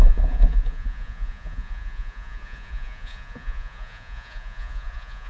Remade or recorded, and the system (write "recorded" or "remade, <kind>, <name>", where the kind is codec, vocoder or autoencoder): remade, vocoder, Vocos